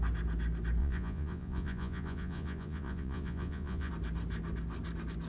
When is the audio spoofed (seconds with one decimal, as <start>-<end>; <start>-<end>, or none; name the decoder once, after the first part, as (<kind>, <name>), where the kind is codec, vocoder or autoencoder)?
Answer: 0.8-3.9 (vocoder, Vocos)